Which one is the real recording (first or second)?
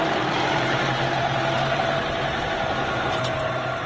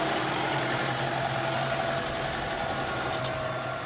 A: second